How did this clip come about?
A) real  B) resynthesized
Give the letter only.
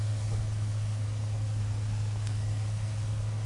B